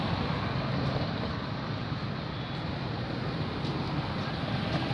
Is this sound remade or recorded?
recorded